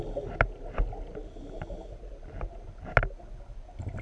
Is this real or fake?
real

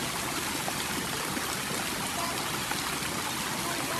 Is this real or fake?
real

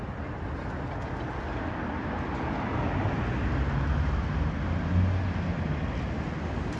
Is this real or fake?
real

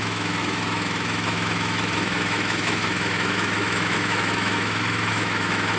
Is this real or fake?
fake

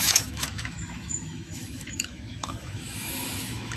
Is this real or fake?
fake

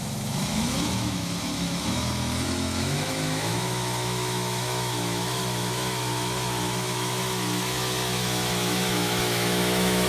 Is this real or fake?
fake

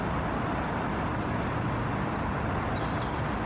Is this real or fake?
real